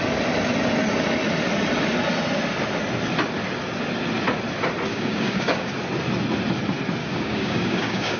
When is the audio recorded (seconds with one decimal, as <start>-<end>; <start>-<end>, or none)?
0.0-4.9; 5.7-7.0